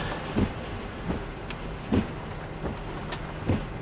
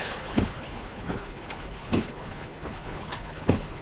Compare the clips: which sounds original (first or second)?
first